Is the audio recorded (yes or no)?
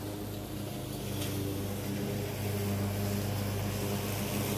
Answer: yes